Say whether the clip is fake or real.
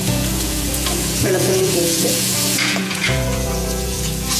fake